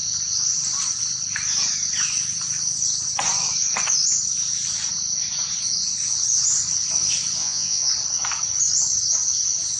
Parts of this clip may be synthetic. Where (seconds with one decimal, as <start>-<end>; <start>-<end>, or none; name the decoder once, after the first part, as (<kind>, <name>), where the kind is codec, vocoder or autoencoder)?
7.4-7.9 (vocoder, Vocos)